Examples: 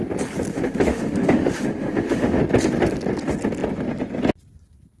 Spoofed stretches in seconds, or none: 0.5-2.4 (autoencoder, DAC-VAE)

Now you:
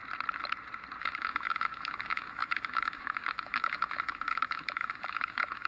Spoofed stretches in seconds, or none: 1.0-5.7 (autoencoder, DAC-VAE)